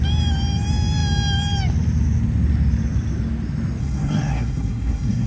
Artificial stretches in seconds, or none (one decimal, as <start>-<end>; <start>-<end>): 3.8-5.3